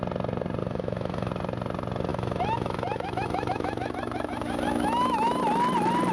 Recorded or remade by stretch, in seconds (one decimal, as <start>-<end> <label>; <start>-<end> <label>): 0.0-0.6 recorded; 0.6-1.3 remade; 1.3-2.1 recorded; 2.1-5.4 remade; 5.4-6.1 recorded